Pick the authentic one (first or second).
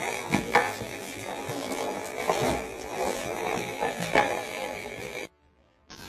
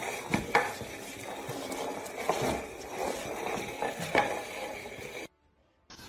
second